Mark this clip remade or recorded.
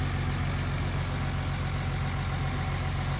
recorded